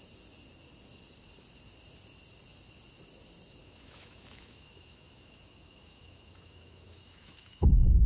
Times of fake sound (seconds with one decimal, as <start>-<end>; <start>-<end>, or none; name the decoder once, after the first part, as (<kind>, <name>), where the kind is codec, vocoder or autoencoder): 3.6-8.1 (autoencoder, DAC-VAE)